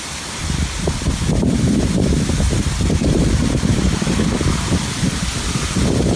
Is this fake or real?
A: fake